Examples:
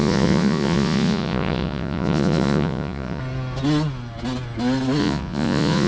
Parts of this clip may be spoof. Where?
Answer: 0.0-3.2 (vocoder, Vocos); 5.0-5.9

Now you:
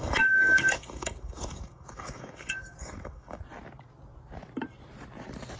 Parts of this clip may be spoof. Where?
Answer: 0.0-3.4 (codec, DAC)

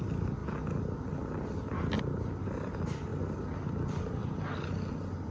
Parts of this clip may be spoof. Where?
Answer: none

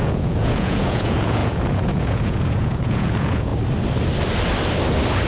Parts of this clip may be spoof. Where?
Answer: 0.0-3.5 (vocoder, Vocos)

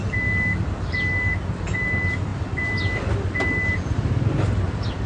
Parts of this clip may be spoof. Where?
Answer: none

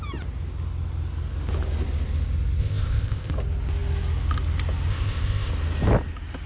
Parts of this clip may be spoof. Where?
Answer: 2.6-3.3 (codec, ZipCodec); 4.9-5.5

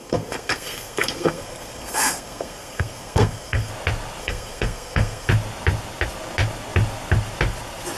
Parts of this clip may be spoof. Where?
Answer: 0.0-3.7 (codec, SNAC); 4.2-5.3

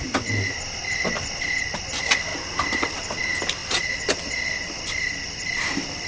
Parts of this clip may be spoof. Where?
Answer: none